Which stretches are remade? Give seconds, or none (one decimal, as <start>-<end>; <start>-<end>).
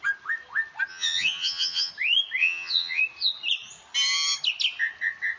0.9-1.9; 2.4-3.0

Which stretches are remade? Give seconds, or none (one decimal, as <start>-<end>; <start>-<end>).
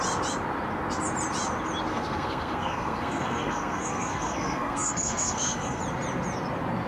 1.9-5.8